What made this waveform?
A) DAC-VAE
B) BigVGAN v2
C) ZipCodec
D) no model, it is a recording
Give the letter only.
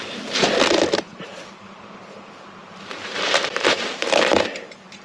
B